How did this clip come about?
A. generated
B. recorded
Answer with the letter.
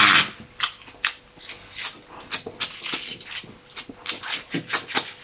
B